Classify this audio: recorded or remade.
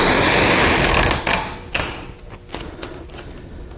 recorded